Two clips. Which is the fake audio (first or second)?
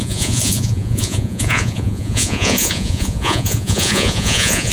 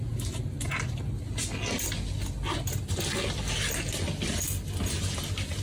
first